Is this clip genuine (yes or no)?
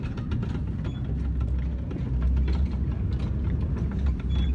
yes